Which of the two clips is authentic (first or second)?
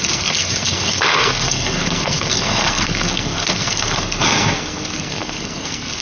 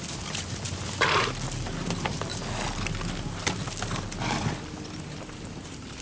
second